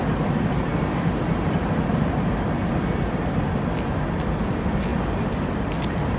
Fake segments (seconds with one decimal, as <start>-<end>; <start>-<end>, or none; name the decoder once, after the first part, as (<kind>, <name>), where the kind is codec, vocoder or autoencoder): none